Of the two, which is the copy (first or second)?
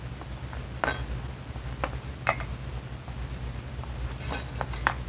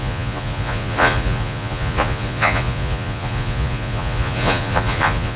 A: second